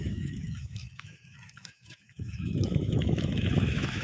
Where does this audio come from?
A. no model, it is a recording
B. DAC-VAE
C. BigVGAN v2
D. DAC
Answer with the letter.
B